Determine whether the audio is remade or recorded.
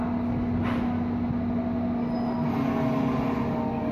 recorded